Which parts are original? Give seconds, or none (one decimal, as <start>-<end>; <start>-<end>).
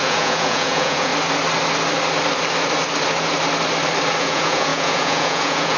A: 1.1-4.2